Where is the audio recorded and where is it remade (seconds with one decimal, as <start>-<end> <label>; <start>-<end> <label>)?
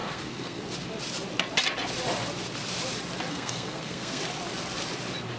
0.0-0.7 remade; 0.7-3.3 recorded; 3.3-4.2 remade; 4.2-5.4 recorded